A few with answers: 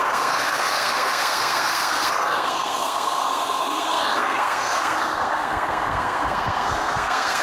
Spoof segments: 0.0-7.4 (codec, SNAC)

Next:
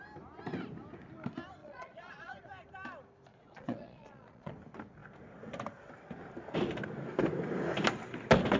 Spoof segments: 1.6-2.3 (vocoder, Vocos); 3.3-4.5

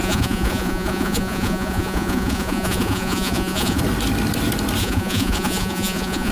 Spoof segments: 0.0-3.8 (vocoder, Vocos); 4.8-6.3

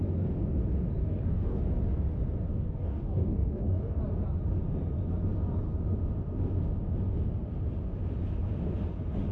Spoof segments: 1.0-1.6 (codec, DAC); 2.5-4.0